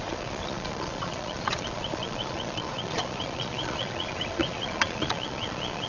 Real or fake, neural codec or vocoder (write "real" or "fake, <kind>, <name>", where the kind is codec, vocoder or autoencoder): fake, vocoder, Vocos